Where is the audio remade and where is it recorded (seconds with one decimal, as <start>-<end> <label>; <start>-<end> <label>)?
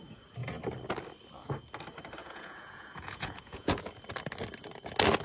0.0-2.2 recorded; 2.2-3.8 remade; 3.8-5.2 recorded